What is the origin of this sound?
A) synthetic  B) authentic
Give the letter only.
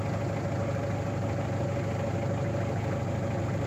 B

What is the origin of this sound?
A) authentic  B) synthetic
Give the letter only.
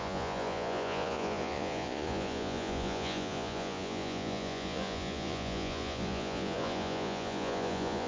B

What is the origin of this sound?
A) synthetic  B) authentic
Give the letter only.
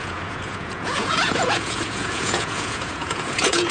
A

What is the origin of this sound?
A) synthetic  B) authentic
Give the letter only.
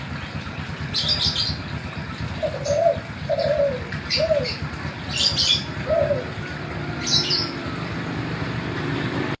B